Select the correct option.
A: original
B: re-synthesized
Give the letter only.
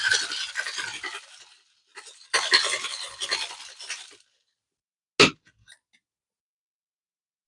A